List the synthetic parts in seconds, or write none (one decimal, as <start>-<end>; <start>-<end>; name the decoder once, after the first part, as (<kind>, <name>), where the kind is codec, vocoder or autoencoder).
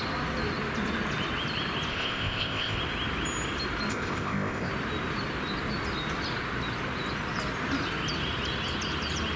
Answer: 1.9-2.8 (codec, ZipCodec); 3.9-4.7